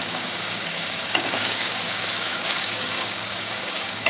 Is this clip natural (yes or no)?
no